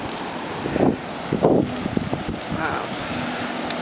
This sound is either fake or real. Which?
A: real